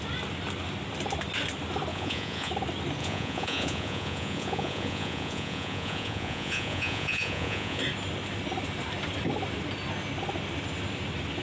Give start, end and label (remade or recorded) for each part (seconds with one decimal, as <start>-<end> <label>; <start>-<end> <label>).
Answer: 0.0-1.9 recorded; 1.9-2.5 remade; 2.5-3.0 recorded; 3.0-7.8 remade; 7.8-11.4 recorded